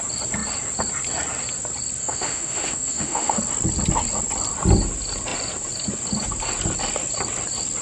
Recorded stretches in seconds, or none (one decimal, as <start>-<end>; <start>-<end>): 0.0-2.0; 3.4-7.8